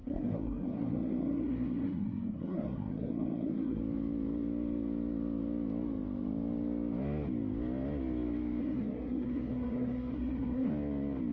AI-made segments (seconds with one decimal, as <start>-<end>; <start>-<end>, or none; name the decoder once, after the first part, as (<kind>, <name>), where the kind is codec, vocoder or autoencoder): 0.0-3.8 (codec, SNAC); 8.6-10.7